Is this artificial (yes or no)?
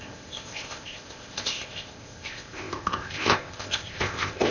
yes